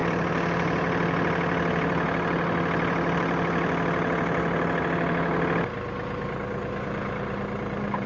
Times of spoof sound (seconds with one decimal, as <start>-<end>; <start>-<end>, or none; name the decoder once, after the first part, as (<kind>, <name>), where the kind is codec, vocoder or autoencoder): none